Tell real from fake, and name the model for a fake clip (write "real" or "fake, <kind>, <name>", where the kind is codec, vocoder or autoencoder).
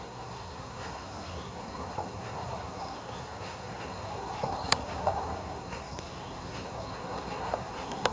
fake, codec, SNAC